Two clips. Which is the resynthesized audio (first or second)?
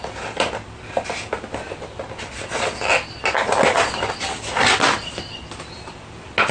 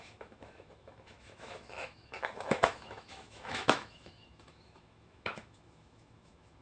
second